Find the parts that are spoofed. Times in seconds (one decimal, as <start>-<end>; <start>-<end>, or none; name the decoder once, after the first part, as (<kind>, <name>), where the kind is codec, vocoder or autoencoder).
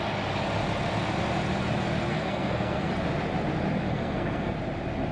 2.1-2.9 (codec, SNAC); 3.8-4.5